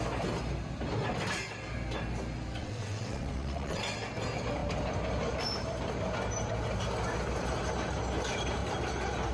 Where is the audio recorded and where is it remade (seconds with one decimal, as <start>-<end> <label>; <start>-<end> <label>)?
0.0-2.6 recorded; 2.6-3.8 remade; 3.8-9.3 recorded